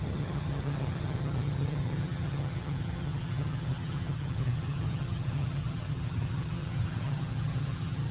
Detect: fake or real fake